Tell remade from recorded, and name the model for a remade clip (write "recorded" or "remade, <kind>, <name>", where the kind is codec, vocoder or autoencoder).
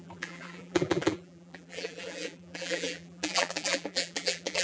remade, vocoder, BigVGAN v2